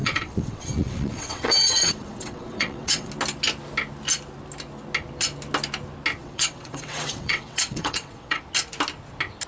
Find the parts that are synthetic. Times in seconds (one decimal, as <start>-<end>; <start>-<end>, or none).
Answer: 0.0-3.1; 6.2-8.4